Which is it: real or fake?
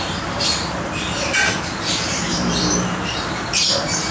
fake